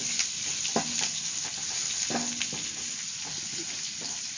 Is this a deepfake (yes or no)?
no